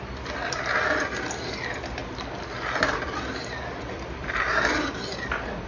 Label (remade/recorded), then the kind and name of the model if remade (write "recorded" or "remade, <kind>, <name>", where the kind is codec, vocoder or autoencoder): recorded